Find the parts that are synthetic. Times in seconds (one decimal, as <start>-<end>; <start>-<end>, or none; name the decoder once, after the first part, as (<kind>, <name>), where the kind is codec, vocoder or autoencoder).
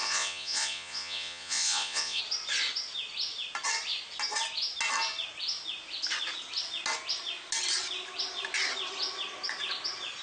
0.0-2.2 (vocoder, Vocos)